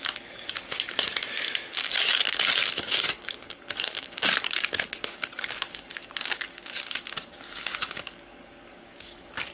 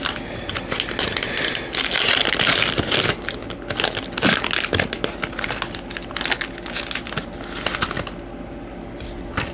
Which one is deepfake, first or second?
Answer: first